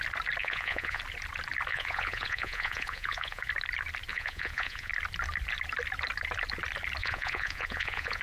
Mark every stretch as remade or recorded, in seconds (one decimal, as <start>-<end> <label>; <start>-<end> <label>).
0.0-0.4 recorded; 0.4-1.0 remade; 1.0-1.7 recorded; 1.7-3.5 remade; 3.5-4.1 recorded; 4.1-4.9 remade; 4.9-7.0 recorded; 7.0-8.2 remade